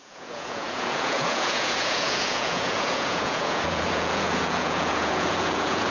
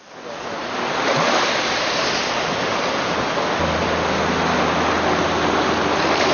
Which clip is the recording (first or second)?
second